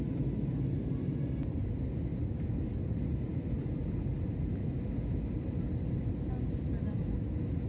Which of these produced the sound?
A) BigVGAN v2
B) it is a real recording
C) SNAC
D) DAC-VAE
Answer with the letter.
B